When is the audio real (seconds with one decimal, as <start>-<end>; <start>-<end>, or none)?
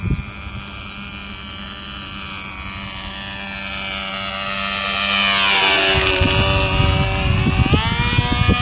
0.0-8.6